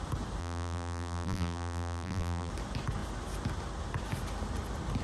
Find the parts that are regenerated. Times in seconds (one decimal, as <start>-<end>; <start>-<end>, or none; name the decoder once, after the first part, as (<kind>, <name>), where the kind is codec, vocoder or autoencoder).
0.4-2.5 (vocoder, BigVGAN v2)